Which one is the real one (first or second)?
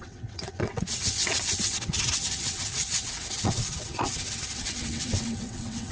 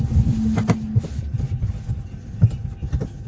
second